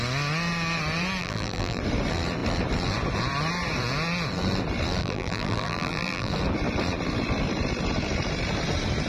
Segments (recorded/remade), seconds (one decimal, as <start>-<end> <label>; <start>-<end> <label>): 0.0-1.2 recorded; 1.2-1.8 remade; 1.8-5.0 recorded; 5.0-6.3 remade; 6.3-9.1 recorded